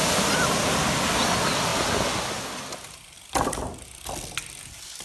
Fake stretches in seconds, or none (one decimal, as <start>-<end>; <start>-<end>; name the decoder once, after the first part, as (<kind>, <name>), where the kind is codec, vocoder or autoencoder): none

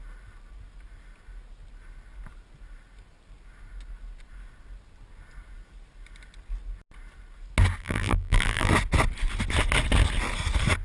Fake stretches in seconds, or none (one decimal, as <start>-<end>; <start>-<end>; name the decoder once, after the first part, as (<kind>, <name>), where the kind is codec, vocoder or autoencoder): 7.8-8.7 (vocoder, BigVGAN v2)

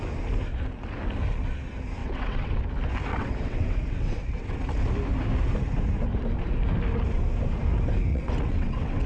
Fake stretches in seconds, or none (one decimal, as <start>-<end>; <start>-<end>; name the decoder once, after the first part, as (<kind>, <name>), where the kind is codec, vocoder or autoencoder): 2.0-2.6 (vocoder, WaveNeXt); 3.1-4.6; 8.1-9.1

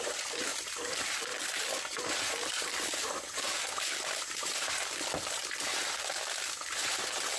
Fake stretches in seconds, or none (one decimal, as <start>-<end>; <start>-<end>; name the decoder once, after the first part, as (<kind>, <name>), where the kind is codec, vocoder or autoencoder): none

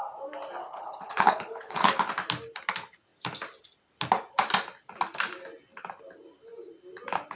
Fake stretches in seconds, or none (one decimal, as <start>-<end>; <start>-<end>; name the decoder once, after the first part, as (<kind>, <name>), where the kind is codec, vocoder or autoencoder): 0.6-2.0 (codec, HILCodec)

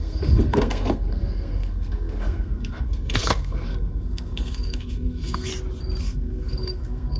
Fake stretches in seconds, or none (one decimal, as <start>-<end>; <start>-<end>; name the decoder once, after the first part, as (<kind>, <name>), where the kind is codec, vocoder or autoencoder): 0.0-5.5 (codec, SNAC); 6.0-7.2

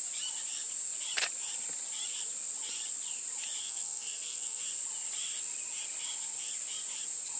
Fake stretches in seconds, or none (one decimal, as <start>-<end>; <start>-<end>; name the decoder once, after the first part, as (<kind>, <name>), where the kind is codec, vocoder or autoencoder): 3.6-4.6 (codec, SNAC)

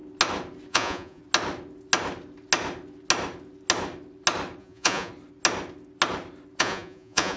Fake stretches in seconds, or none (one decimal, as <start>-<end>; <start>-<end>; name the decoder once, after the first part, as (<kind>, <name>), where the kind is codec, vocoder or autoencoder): 0.7-1.2 (vocoder, Vocos); 4.6-5.1; 6.6-7.4